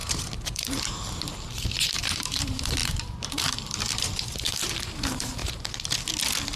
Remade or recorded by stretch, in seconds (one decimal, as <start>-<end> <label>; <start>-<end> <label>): 0.0-5.4 remade; 5.4-6.6 recorded